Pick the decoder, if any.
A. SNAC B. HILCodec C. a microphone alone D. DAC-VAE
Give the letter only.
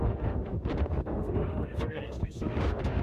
D